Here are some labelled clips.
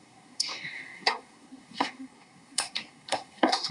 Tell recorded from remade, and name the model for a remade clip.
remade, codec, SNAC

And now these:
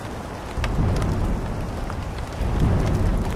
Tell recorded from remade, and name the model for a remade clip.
recorded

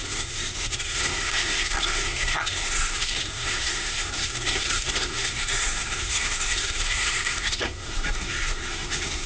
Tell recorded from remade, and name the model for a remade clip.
remade, codec, SNAC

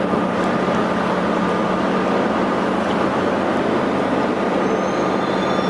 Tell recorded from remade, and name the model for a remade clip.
recorded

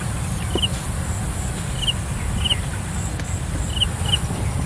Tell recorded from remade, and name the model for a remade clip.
recorded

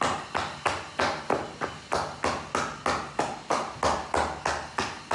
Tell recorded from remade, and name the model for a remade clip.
recorded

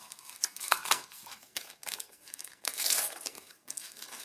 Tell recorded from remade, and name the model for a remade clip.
remade, codec, SNAC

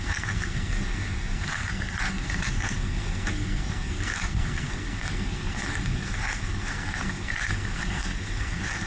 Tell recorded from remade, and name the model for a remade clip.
remade, codec, SNAC